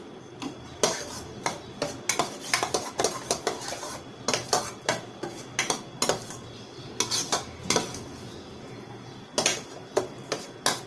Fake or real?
real